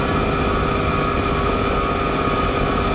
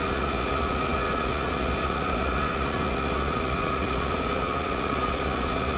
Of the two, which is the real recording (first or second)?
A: first